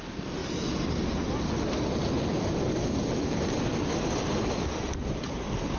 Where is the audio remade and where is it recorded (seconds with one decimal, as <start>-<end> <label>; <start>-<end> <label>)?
0.0-5.8 recorded